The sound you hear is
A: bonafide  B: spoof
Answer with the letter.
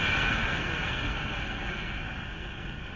B